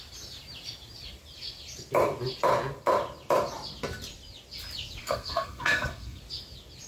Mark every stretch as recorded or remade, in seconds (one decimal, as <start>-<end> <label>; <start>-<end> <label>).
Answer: 0.0-5.0 recorded; 5.0-6.2 remade; 6.2-6.9 recorded